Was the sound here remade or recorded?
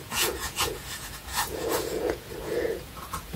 remade